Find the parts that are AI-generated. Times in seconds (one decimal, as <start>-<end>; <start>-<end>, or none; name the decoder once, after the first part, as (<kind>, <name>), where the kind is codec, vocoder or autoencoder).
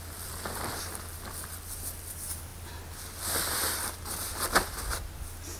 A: none